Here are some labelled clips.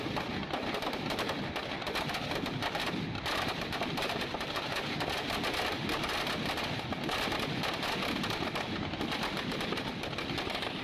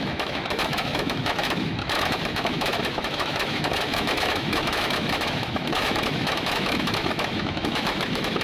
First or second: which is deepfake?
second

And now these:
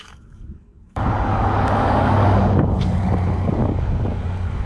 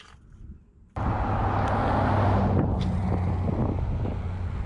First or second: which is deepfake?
first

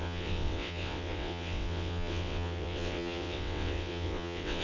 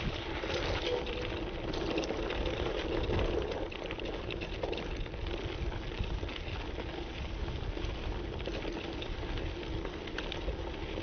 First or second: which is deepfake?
first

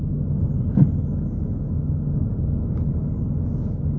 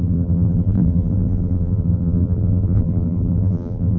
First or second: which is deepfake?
second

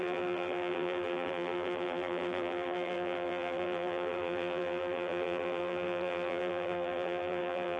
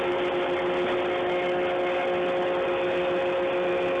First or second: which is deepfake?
first